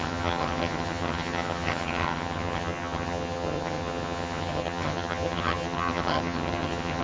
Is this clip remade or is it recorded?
remade